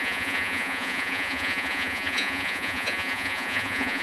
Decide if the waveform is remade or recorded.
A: remade